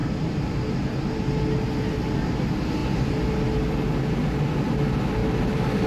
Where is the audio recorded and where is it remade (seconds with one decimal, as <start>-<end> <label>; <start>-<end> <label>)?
0.0-1.3 remade; 1.3-5.2 recorded; 5.2-5.9 remade